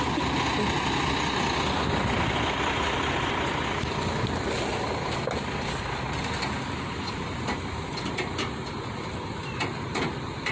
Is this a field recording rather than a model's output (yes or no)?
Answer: yes